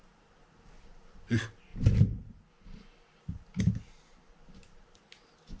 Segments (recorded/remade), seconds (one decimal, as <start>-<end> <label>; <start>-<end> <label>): 0.0-5.6 recorded